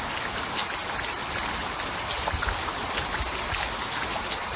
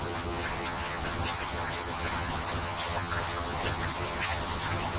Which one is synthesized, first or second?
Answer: second